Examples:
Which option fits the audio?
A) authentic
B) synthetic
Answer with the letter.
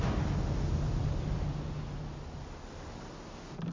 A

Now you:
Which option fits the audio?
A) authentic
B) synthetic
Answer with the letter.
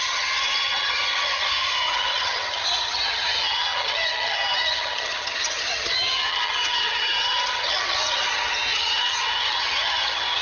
B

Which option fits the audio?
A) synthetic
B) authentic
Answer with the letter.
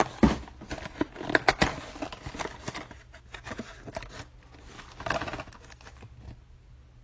B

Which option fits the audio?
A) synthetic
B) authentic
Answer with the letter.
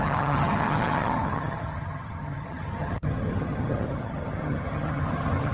A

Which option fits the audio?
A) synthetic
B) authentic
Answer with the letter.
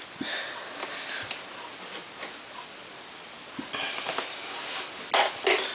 B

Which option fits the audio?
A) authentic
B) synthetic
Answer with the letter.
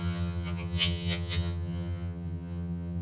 B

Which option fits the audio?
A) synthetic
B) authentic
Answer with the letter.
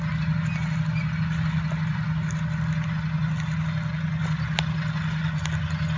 B